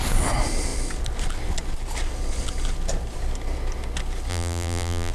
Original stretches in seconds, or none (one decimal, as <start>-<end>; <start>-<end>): 0.0-4.3